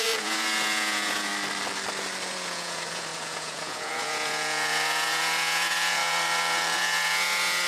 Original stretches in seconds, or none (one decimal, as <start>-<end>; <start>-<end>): 1.3-2.3